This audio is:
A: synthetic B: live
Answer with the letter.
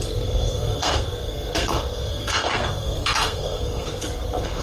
A